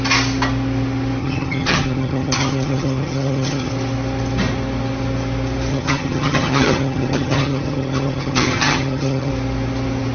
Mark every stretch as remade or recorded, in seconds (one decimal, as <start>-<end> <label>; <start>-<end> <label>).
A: 0.0-1.2 recorded; 1.2-3.7 remade; 3.7-5.7 recorded; 5.7-9.3 remade; 9.3-10.1 recorded